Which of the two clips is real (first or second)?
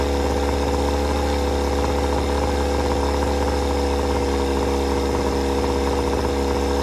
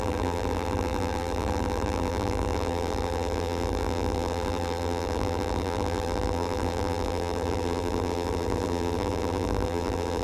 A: first